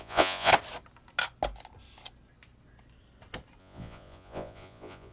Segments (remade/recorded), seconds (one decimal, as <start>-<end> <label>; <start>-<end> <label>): 0.0-0.5 remade; 0.5-3.6 recorded; 3.6-5.1 remade